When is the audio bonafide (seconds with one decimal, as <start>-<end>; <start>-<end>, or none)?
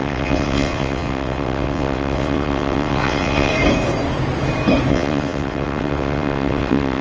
3.5-4.9